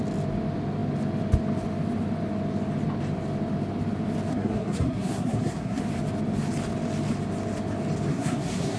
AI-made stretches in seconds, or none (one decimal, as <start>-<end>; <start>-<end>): 4.3-5.8; 8.1-8.8